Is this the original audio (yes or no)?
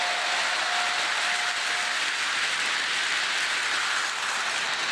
yes